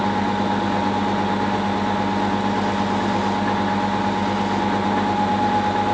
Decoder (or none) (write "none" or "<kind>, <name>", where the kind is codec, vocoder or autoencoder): none